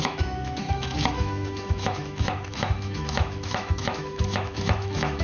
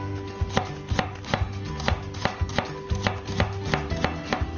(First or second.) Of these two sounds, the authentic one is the second